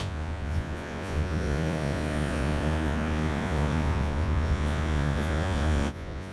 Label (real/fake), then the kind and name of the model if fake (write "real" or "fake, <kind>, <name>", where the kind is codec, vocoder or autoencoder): fake, vocoder, Vocos